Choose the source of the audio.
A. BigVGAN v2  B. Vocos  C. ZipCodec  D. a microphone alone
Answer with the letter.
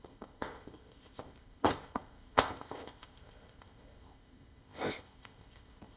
C